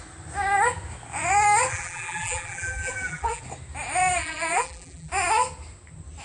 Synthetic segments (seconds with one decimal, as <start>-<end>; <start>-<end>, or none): 1.7-3.4; 4.2-5.1